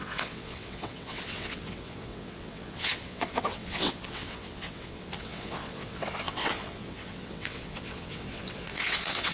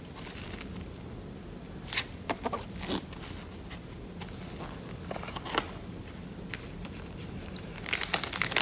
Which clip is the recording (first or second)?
second